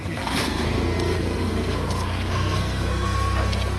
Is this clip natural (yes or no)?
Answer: no